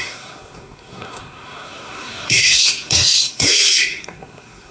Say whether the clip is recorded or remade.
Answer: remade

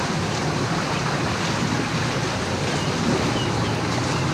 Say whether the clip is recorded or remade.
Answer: recorded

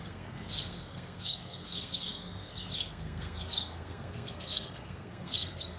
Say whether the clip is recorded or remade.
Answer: remade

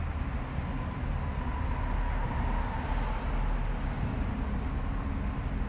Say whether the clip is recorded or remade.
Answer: recorded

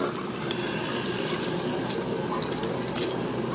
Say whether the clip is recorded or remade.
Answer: recorded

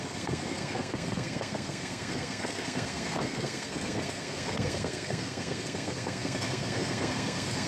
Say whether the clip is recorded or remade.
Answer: remade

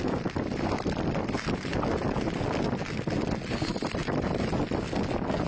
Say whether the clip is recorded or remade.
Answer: recorded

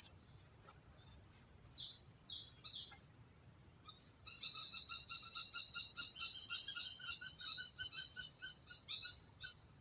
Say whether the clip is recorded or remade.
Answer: recorded